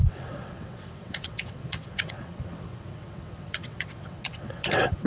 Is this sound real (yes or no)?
no